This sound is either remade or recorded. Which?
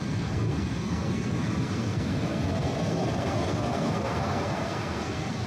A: remade